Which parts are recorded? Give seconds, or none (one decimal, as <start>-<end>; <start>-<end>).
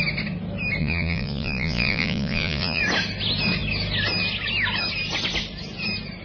0.0-0.8; 2.8-6.2